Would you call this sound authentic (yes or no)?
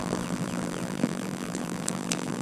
no